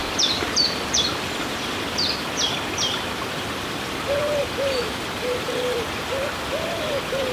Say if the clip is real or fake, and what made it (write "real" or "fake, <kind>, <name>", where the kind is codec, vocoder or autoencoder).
fake, vocoder, BigVGAN v2